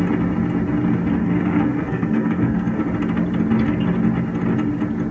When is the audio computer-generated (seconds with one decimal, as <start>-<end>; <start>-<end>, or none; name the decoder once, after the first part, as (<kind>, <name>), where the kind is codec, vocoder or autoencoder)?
1.2-2.8 (codec, SNAC)